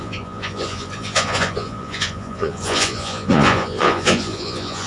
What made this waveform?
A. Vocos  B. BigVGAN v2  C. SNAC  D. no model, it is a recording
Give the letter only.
A